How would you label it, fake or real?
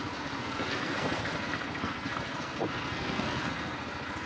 fake